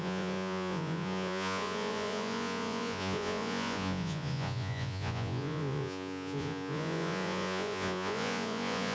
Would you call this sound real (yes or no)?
no